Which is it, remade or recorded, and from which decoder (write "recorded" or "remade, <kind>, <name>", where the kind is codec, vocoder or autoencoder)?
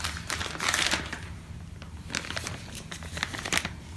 recorded